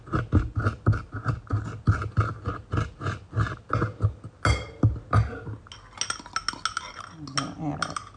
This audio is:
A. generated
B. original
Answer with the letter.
B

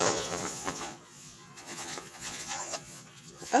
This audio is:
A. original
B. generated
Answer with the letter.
B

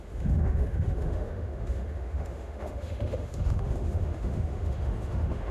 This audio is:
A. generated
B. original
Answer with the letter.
A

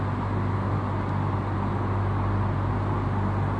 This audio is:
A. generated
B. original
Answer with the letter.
B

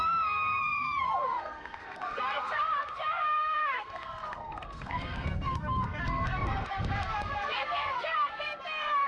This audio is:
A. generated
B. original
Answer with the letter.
A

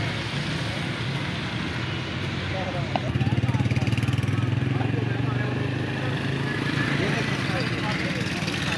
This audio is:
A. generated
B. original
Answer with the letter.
B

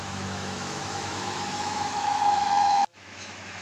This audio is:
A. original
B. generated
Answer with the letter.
B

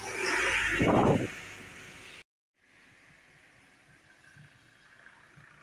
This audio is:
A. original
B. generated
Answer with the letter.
A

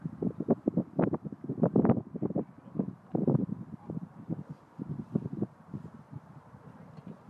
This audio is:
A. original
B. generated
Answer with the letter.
B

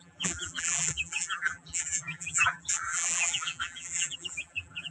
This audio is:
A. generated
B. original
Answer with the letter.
A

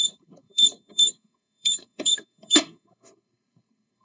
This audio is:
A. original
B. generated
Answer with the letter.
B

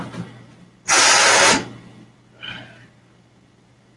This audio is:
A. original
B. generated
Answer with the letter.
A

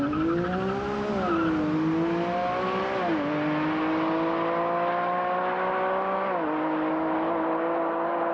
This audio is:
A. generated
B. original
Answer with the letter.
B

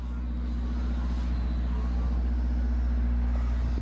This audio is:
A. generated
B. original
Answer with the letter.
B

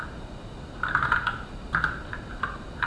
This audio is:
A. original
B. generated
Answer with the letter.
A